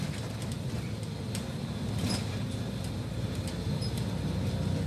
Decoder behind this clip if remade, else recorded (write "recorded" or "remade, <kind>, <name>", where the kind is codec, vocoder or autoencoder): recorded